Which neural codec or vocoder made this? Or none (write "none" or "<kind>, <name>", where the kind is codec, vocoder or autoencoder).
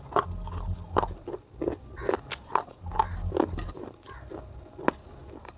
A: none